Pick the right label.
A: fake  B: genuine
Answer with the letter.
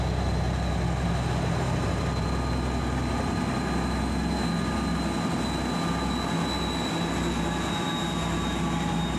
B